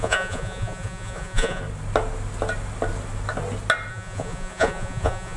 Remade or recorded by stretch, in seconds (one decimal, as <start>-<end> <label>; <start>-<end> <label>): 0.0-1.6 remade; 1.6-3.9 recorded; 3.9-5.4 remade